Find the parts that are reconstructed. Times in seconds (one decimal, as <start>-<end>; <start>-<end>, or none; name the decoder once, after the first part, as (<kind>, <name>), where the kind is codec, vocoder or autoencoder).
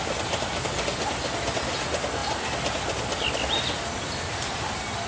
none